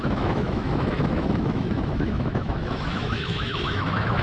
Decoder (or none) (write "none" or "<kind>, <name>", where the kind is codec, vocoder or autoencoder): autoencoder, DAC-VAE